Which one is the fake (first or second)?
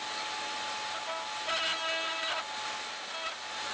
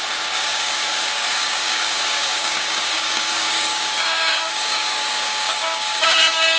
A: second